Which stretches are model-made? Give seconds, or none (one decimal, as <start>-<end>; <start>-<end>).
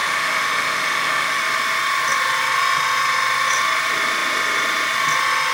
0.0-1.4